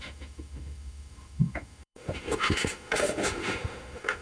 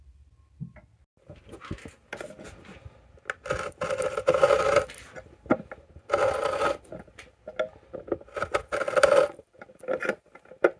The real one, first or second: second